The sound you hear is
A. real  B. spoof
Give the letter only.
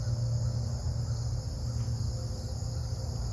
A